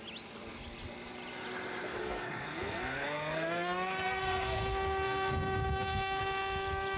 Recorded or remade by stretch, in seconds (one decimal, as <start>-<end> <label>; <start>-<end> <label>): 0.0-2.0 recorded; 2.0-6.2 remade; 6.2-7.0 recorded